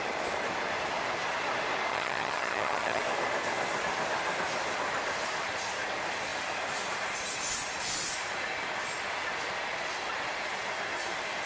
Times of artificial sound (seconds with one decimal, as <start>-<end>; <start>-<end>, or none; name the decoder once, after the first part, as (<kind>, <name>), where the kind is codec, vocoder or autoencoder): 1.9-3.0 (vocoder, HiFi-GAN)